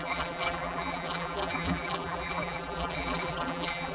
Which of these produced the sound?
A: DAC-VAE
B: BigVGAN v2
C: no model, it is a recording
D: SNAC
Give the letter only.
B